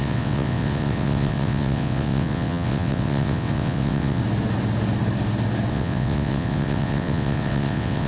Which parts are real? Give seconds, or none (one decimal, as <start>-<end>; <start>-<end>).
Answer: 4.2-5.7